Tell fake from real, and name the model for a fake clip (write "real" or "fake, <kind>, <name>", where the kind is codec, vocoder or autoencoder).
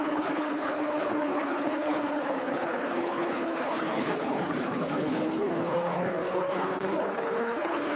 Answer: fake, codec, HILCodec